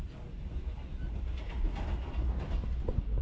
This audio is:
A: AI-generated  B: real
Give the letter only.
B